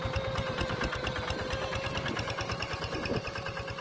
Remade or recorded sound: recorded